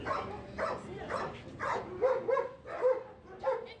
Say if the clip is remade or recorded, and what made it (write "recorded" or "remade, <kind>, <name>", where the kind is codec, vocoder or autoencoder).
recorded